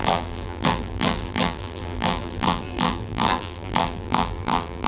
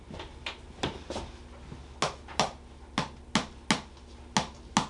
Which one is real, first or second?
second